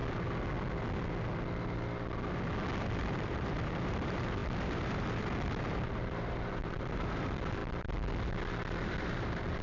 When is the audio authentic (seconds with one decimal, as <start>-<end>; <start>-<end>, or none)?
0.0-2.8; 7.6-8.8